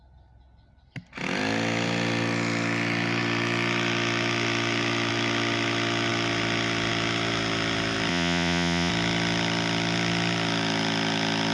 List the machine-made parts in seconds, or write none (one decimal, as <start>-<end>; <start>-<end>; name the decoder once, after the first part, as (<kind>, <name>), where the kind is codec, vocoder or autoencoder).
8.1-8.9 (vocoder, Vocos)